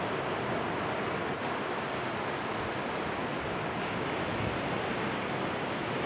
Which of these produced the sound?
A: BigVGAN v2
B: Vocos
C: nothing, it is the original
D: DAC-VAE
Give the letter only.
C